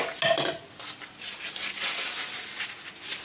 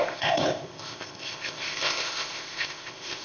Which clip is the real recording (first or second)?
first